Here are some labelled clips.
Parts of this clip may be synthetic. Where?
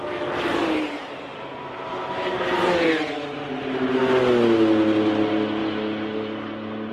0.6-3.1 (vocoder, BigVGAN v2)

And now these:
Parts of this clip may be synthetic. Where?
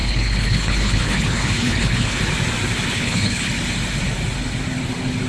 0.0-2.2 (codec, HILCodec); 2.9-3.5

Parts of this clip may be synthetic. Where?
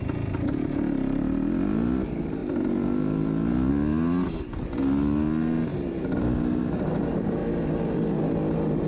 none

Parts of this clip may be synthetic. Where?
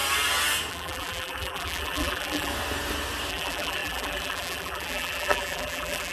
0.7-2.5 (vocoder, BigVGAN v2); 3.3-6.1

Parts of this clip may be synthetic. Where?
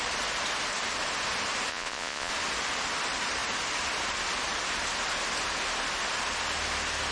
1.7-2.3 (vocoder, Vocos)